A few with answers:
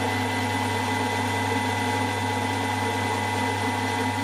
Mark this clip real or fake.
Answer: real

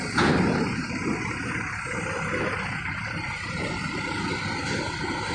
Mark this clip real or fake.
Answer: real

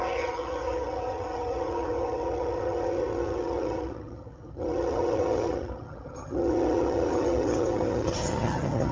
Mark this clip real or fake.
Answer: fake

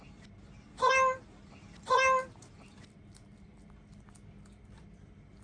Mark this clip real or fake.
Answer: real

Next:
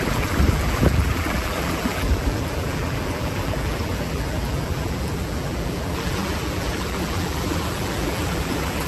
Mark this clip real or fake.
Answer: fake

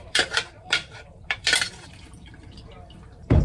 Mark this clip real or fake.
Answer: fake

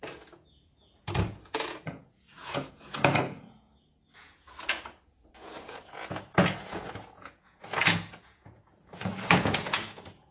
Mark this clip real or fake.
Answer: fake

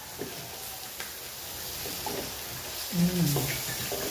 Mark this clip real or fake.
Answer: real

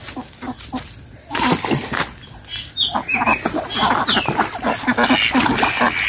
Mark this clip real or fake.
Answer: real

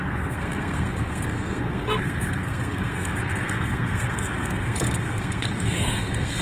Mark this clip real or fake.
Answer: fake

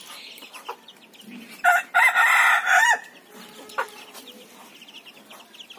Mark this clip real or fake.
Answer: real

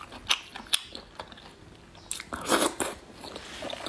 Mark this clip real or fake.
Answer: real